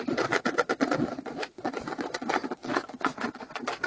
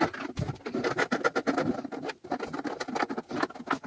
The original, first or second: second